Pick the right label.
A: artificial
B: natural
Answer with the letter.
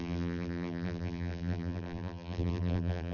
A